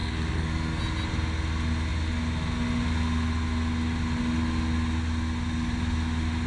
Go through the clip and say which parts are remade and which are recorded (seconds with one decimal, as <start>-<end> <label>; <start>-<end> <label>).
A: 0.0-0.8 remade; 0.8-6.5 recorded